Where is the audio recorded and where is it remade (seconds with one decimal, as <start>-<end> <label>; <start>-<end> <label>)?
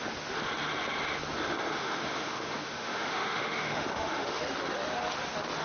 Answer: 0.0-1.8 recorded; 1.8-4.4 remade; 4.4-5.6 recorded